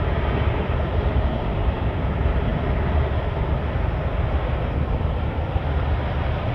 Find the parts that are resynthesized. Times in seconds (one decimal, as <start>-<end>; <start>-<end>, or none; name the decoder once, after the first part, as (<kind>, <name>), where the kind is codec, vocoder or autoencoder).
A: 0.0-2.5 (vocoder, BigVGAN v2)